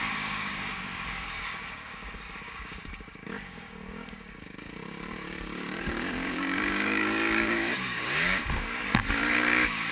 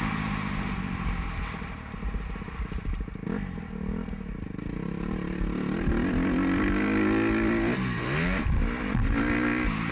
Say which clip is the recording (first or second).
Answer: second